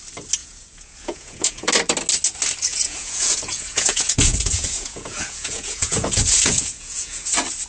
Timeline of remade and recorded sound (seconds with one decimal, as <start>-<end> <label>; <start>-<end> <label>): 0.0-0.4 recorded; 0.4-1.7 remade; 1.7-2.7 recorded; 2.7-7.3 remade; 7.3-7.7 recorded